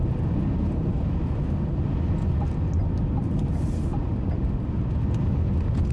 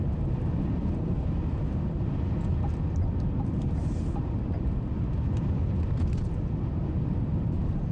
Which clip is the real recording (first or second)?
first